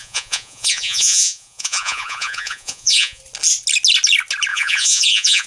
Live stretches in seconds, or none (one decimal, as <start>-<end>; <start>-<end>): 3.2-4.5